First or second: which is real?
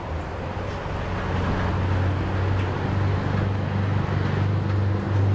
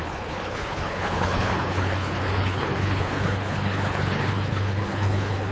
first